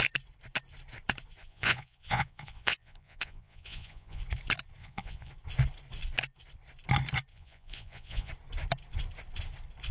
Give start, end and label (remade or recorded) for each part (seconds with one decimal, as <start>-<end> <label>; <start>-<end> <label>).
0.0-1.4 recorded; 1.4-4.2 remade; 4.2-4.8 recorded; 4.8-5.3 remade; 5.3-7.3 recorded; 7.3-8.3 remade; 8.3-9.9 recorded